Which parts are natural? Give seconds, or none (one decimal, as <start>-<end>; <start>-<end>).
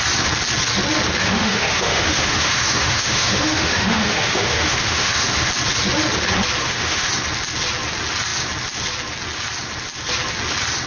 0.0-1.2; 5.5-6.6; 7.1-10.9